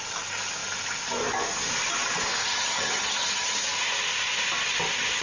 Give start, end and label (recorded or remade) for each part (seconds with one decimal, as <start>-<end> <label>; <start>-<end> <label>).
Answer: 0.0-2.4 recorded; 2.4-3.7 remade; 3.7-5.2 recorded